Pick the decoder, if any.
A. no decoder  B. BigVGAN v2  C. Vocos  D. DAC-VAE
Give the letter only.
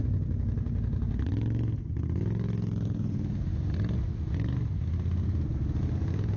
A